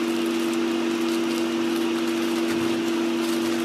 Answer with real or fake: real